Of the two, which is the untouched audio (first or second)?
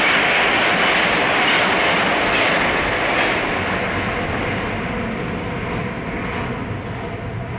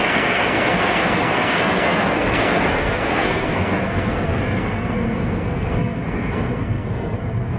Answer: first